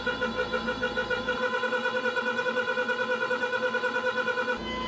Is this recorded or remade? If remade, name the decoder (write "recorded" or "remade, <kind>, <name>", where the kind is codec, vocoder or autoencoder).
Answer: recorded